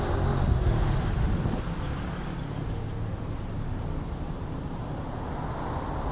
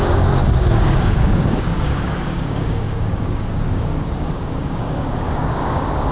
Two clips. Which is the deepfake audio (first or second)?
second